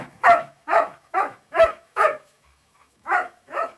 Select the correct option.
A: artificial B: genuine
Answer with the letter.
A